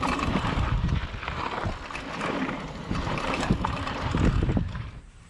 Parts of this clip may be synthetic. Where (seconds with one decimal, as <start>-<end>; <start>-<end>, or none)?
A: 0.0-1.0; 2.3-5.3